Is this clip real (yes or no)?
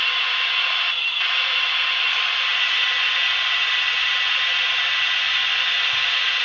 yes